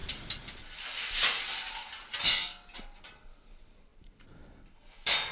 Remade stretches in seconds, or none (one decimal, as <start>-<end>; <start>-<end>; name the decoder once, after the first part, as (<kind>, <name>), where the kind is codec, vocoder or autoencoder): none